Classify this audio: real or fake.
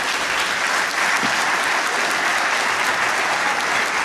real